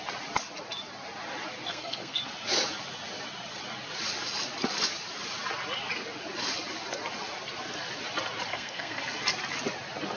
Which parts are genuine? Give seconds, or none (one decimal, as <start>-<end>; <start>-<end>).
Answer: 0.0-1.6; 2.2-8.5; 9.0-10.2